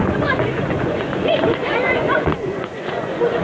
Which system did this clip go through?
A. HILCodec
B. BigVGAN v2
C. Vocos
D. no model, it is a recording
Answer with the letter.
C